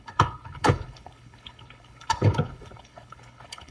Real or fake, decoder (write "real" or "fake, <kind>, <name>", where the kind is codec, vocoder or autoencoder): fake, codec, HILCodec